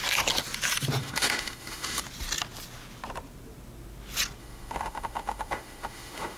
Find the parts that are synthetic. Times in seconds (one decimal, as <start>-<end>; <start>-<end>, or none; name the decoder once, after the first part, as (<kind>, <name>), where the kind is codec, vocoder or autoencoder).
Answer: 1.0-2.0 (autoencoder, DAC-VAE); 4.4-6.4